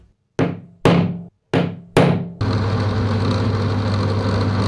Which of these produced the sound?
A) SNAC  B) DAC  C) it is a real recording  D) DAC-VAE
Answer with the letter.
C